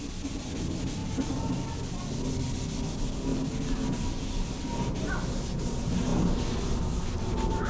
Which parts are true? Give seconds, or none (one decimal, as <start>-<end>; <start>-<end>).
0.0-7.7

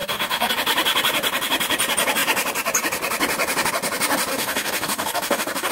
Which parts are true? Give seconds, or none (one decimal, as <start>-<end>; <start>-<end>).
0.5-4.3

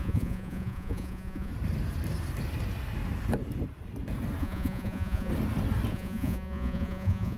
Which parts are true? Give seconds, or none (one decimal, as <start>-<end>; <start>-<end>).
1.5-4.4; 5.3-5.9

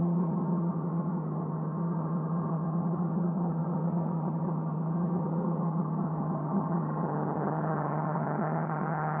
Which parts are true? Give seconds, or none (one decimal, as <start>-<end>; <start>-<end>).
none

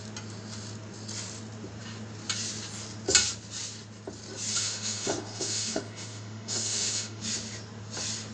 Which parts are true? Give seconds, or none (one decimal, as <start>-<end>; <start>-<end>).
0.0-4.5; 7.2-8.3

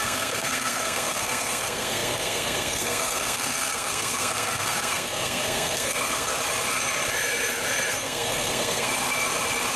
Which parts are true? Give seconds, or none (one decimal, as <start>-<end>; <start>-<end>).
6.3-7.9; 8.9-9.8